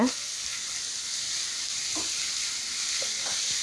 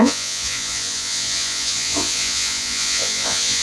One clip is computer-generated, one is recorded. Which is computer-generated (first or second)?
second